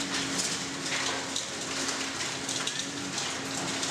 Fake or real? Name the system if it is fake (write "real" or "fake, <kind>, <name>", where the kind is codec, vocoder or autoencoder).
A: real